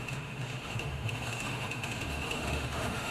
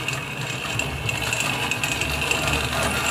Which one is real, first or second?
second